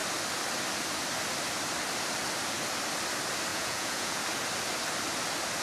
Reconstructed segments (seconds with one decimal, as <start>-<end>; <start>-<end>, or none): 3.5-4.2